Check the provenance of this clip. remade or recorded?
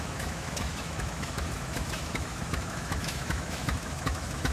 remade